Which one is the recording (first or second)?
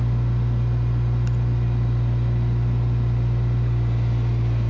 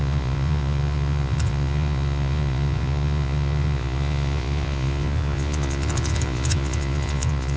first